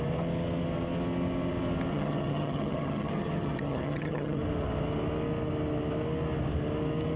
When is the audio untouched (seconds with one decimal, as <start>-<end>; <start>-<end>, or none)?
0.0-1.9; 4.4-7.2